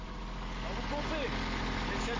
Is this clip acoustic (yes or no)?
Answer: yes